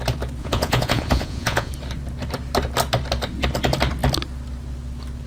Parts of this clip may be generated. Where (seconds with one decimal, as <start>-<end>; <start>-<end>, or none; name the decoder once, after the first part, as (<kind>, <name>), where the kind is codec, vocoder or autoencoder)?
0.4-1.7 (vocoder, Vocos)